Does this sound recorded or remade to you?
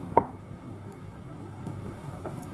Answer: remade